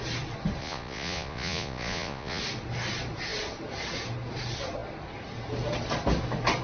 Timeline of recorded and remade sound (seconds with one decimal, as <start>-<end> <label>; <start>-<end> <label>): 0.0-0.6 recorded; 0.6-2.4 remade; 2.4-6.6 recorded